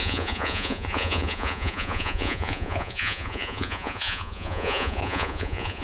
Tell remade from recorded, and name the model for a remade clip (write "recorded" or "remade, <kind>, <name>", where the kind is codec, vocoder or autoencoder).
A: remade, vocoder, Vocos